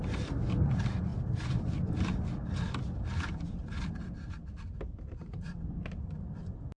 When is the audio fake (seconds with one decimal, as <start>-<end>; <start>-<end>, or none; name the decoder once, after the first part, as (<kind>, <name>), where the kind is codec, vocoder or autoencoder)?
none